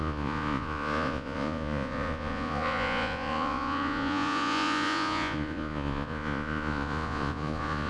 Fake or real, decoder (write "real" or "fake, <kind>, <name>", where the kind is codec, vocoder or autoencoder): fake, vocoder, Vocos